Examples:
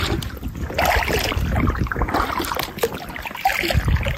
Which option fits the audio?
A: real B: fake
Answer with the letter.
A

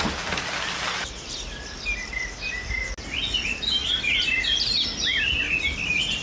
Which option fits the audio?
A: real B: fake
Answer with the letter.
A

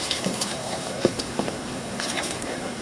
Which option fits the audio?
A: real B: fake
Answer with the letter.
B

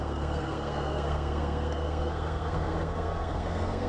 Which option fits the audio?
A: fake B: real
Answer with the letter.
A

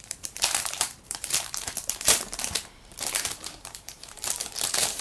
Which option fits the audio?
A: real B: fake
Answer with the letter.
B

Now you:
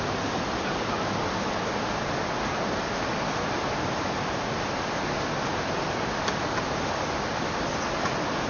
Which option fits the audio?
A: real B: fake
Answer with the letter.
A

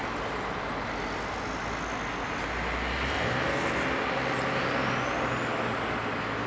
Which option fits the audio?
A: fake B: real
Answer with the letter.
B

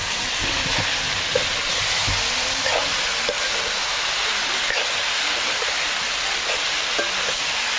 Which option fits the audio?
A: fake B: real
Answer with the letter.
B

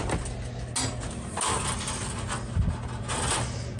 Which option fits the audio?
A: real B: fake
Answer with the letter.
A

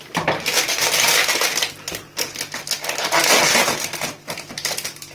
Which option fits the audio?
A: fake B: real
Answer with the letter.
B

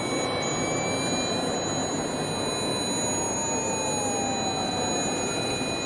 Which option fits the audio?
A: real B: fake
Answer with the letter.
A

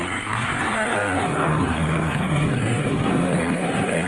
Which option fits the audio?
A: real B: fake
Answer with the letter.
B